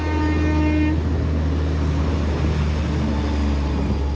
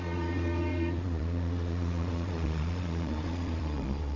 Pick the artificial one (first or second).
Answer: second